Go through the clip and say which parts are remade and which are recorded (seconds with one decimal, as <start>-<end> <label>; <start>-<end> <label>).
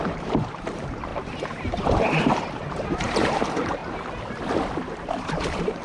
0.0-3.8 remade; 3.8-4.7 recorded; 4.7-5.8 remade